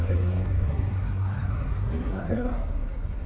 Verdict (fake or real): fake